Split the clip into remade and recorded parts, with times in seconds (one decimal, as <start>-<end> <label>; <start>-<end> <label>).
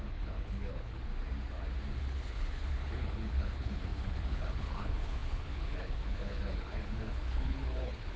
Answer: 0.0-1.1 remade; 1.1-2.0 recorded; 2.0-8.2 remade